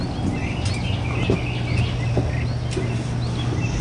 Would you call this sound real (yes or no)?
yes